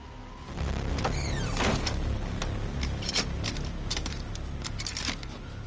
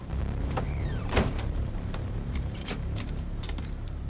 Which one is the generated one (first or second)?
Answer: second